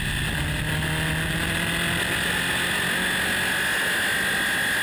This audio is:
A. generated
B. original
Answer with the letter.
B